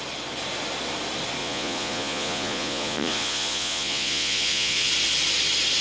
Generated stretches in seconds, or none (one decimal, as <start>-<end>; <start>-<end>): 1.4-4.9